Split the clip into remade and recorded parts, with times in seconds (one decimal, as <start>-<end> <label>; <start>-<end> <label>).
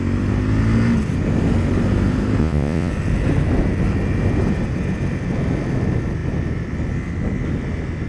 0.0-2.4 recorded; 2.4-2.9 remade; 2.9-8.1 recorded